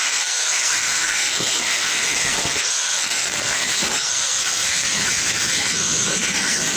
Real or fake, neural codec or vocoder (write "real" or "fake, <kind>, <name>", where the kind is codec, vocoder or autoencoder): fake, codec, SNAC